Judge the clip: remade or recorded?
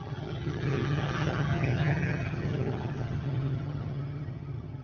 remade